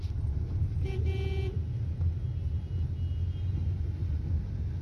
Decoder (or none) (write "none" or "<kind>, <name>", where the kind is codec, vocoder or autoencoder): none